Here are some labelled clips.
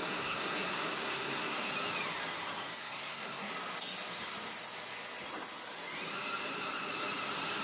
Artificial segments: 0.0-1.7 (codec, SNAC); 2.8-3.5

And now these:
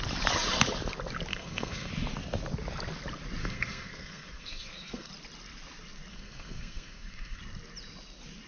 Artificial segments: 1.3-1.9 (codec, SNAC); 3.4-5.1; 6.1-7.4

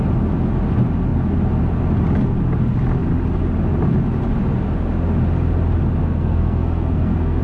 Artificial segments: 6.0-7.4 (codec, SNAC)

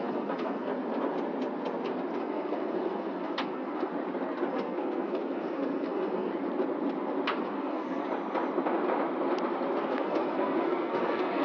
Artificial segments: 0.0-0.7 (codec, SNAC); 2.2-3.9; 4.5-6.3; 7.4-8.0; 9.8-11.4

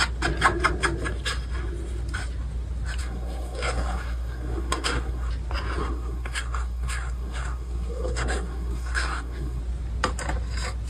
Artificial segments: 3.0-5.3 (codec, SNAC); 5.8-9.6

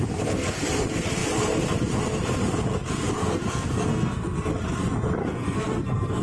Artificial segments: 3.2-4.5 (codec, SNAC); 5.2-6.2

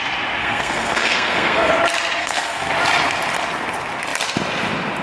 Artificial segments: 0.4-1.7 (codec, SNAC); 2.2-2.7

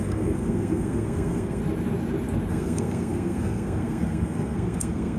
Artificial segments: 0.0-1.6 (codec, SNAC); 2.5-5.2